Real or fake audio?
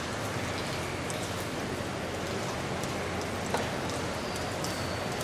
real